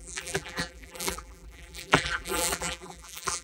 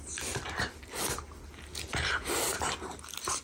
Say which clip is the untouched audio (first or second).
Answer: second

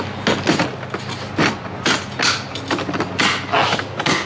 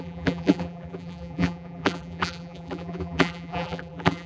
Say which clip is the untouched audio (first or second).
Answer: first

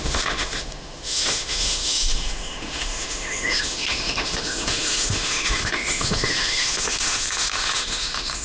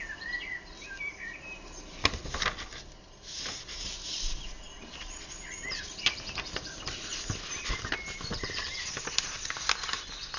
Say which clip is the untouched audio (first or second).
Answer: second